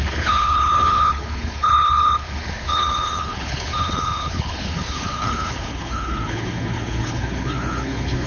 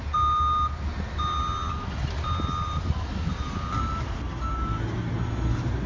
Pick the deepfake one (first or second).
first